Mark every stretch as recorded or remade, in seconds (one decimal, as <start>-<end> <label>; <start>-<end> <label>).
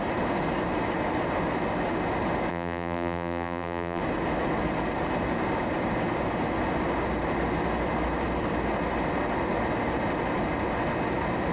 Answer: 0.0-2.5 recorded; 2.5-4.0 remade; 4.0-11.5 recorded